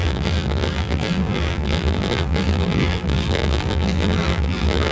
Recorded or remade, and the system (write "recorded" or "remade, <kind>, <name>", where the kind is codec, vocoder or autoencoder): remade, vocoder, BigVGAN v2